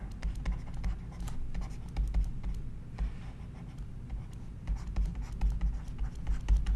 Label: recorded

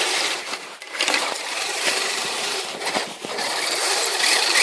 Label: remade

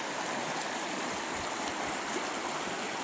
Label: recorded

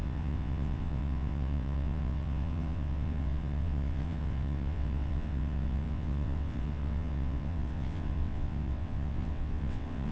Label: remade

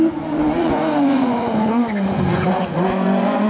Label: remade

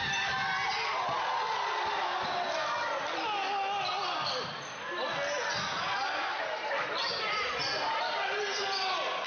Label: recorded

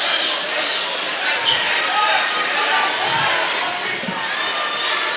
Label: recorded